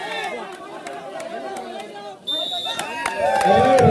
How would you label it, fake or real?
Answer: real